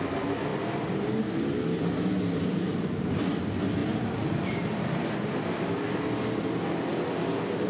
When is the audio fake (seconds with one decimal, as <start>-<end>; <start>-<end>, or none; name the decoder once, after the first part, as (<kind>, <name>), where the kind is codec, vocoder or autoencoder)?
none